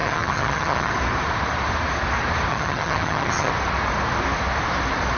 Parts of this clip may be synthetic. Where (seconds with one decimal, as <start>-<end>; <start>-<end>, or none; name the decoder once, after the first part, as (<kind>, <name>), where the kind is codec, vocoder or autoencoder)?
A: 0.0-0.9 (vocoder, HiFi-GAN); 2.5-3.5